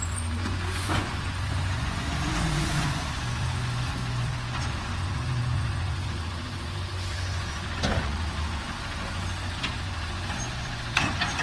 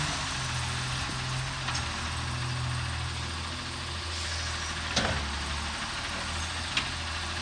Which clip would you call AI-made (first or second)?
first